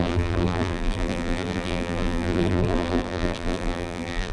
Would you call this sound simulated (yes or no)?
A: yes